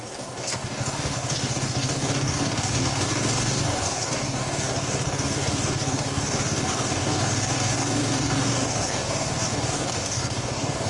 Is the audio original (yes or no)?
no